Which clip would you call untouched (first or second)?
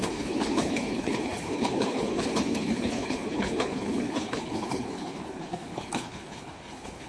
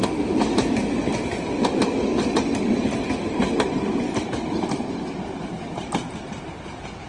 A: second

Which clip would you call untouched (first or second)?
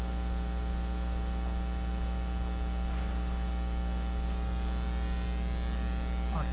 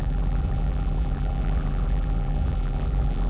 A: first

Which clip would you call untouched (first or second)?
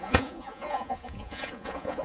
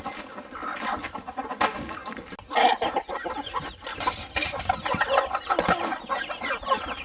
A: second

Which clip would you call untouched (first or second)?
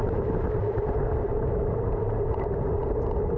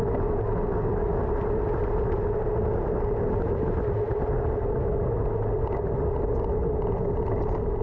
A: second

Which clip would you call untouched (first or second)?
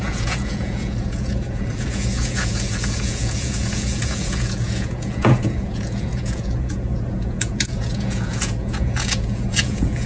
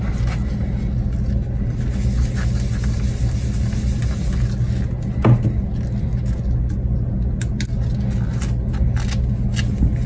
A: second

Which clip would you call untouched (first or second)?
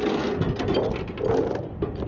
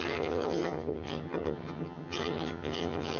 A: first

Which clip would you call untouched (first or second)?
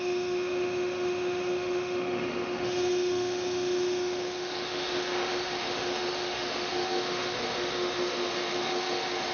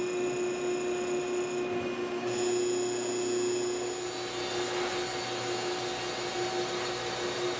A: second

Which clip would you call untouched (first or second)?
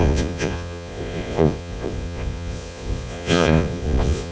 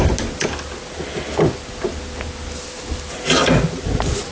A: second